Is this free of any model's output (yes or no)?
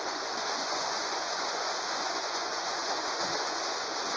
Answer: no